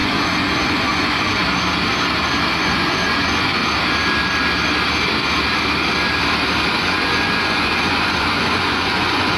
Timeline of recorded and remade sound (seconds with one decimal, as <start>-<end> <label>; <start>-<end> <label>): 0.0-1.4 remade; 1.4-2.6 recorded; 2.6-3.6 remade; 3.6-6.8 recorded; 6.8-9.4 remade